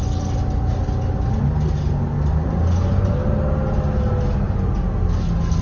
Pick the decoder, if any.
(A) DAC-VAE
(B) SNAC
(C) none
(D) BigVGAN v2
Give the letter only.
C